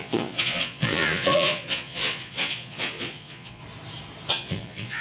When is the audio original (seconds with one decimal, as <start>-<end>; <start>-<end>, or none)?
3.6-4.3